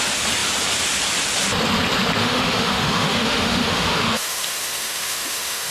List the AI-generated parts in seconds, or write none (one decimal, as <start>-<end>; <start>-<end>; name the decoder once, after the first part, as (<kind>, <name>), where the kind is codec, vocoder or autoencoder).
2.2-5.7 (autoencoder, DAC-VAE)